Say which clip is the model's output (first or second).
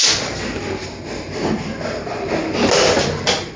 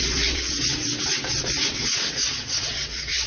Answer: second